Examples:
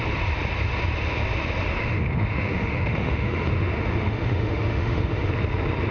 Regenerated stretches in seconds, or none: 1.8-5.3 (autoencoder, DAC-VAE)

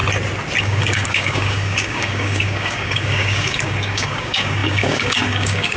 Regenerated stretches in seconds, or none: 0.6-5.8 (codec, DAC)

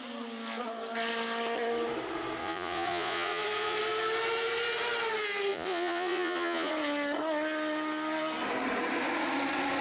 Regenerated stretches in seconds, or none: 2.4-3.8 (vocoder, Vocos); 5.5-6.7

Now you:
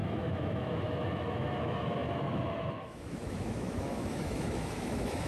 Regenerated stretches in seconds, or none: 0.0-5.3 (autoencoder, DAC-VAE)

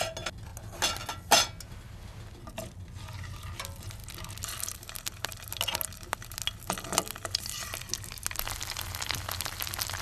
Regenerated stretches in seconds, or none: none

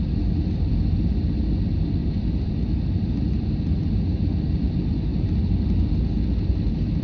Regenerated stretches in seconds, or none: 2.0-2.5 (vocoder, BigVGAN v2)